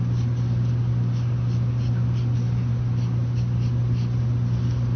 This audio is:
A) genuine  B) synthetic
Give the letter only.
A